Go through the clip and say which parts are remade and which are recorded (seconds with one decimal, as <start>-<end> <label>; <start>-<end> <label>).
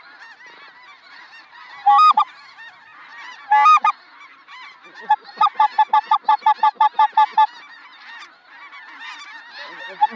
0.0-10.2 recorded